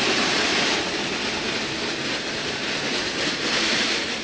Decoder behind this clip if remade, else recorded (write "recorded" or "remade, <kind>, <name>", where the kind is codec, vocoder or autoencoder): recorded